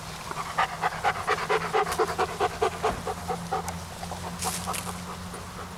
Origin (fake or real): real